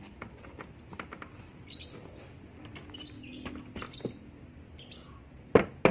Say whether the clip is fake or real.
real